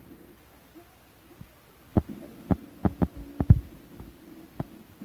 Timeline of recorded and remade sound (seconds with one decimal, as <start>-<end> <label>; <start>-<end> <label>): 0.0-5.0 recorded